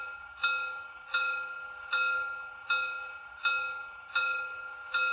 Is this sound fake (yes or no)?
no